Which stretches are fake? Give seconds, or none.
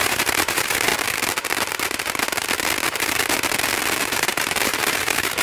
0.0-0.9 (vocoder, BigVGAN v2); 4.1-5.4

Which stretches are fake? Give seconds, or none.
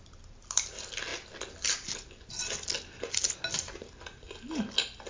none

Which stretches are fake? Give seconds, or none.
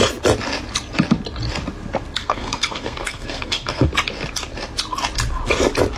2.2-3.9 (codec, SNAC)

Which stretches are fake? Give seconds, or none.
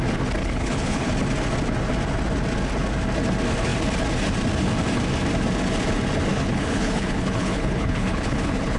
0.4-1.1 (codec, HILCodec); 6.3-8.8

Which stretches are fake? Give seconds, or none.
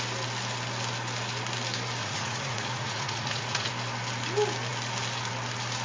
2.0-3.7 (vocoder, Vocos)